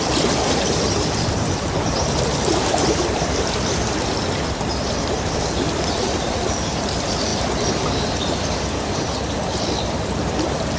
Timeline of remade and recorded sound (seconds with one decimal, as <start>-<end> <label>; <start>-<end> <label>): 0.0-10.8 remade